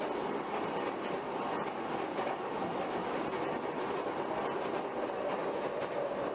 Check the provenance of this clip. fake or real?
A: real